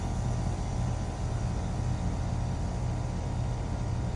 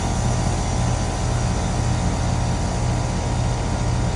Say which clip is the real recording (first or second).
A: second